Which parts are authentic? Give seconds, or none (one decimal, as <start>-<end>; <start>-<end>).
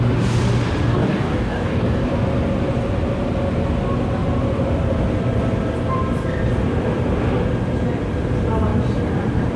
0.0-0.9; 2.1-9.6